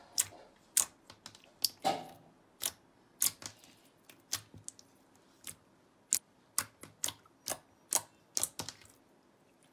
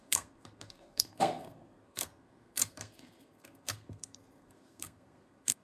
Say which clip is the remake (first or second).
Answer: second